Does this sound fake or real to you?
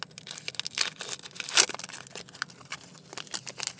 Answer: real